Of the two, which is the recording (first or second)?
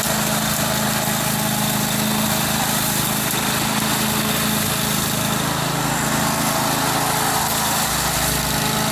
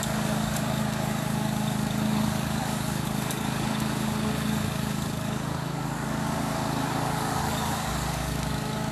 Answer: first